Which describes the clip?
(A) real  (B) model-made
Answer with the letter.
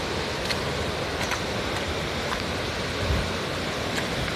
A